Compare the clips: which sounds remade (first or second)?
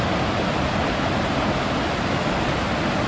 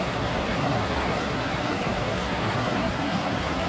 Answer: second